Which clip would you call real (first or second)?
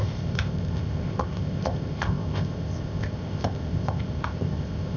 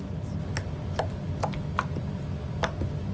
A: second